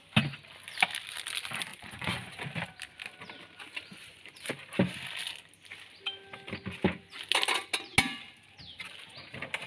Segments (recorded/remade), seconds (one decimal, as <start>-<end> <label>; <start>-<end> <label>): 0.0-1.7 recorded; 1.7-2.3 remade; 2.3-3.9 recorded; 3.9-4.5 remade; 4.5-9.7 recorded